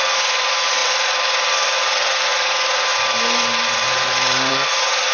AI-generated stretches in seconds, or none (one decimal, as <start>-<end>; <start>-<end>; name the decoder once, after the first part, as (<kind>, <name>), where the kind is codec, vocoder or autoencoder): 0.0-2.9 (vocoder, BigVGAN v2); 4.5-5.1

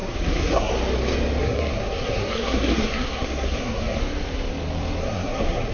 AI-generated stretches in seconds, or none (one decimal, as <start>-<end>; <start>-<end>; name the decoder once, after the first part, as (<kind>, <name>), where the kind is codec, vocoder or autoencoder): 0.0-0.7 (codec, SNAC); 1.4-4.0; 5.0-5.7

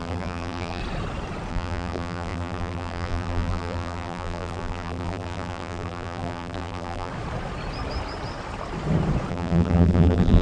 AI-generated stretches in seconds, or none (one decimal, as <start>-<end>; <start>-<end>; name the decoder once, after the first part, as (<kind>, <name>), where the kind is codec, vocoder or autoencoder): 0.0-0.8 (vocoder, BigVGAN v2); 1.5-7.1; 9.3-10.4

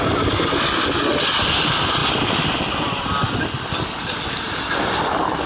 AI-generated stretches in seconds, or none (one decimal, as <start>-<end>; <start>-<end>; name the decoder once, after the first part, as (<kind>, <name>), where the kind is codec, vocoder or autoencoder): none

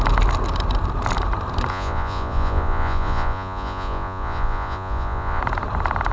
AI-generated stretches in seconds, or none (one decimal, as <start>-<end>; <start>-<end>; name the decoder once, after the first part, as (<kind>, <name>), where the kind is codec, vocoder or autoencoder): 1.7-5.4 (vocoder, Vocos)

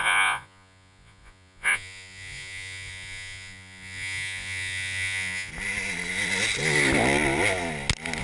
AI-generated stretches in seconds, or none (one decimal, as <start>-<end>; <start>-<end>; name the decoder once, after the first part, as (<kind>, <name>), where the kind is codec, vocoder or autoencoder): 0.0-5.5 (vocoder, Vocos)

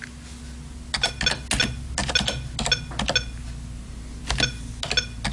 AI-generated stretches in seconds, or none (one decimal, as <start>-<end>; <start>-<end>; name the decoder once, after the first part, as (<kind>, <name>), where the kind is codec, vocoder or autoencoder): none

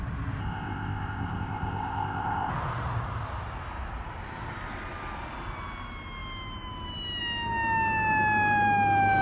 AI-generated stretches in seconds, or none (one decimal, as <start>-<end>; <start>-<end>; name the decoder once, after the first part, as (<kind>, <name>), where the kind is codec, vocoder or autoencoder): 0.4-2.5 (codec, ZipCodec)